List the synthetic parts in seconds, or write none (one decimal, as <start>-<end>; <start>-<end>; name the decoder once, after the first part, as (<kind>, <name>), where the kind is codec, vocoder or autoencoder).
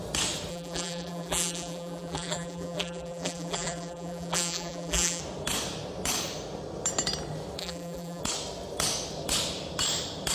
0.5-5.2 (vocoder, BigVGAN v2); 7.6-8.2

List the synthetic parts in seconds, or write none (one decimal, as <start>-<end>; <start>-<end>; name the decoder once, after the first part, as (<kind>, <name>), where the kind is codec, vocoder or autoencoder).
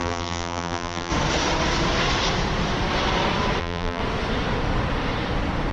0.0-1.1 (vocoder, BigVGAN v2); 3.6-4.0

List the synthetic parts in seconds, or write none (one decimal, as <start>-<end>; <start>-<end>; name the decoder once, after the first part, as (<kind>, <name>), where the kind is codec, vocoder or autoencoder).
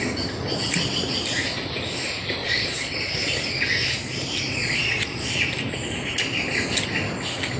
2.4-3.0 (vocoder, Vocos); 4.6-5.3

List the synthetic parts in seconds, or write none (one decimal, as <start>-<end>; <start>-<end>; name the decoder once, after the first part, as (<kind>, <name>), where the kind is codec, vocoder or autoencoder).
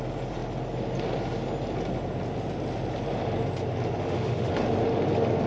4.0-4.5 (autoencoder, DAC-VAE)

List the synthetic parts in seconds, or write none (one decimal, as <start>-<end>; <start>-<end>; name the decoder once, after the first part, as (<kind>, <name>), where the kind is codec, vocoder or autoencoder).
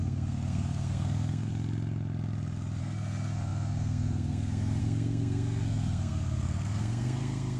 0.0-1.5 (codec, SNAC); 2.8-7.6